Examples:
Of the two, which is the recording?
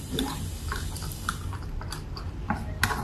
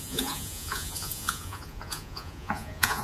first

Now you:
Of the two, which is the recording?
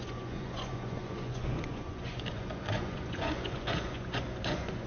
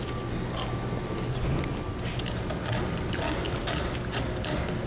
second